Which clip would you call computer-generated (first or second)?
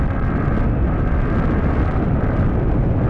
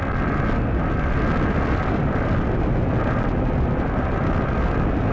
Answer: first